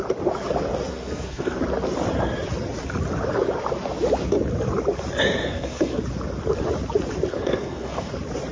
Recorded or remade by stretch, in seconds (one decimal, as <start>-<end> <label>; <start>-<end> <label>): 0.0-0.9 recorded; 0.9-1.6 remade; 1.6-5.4 recorded; 5.4-6.0 remade; 6.0-7.3 recorded; 7.3-8.1 remade; 8.1-8.5 recorded